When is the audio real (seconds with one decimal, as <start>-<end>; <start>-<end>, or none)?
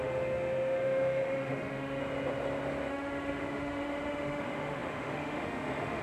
2.0-2.9